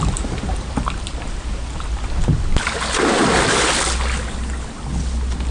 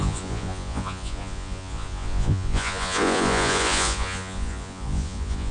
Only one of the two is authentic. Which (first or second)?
first